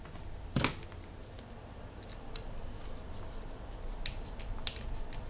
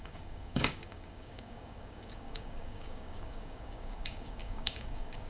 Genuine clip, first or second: first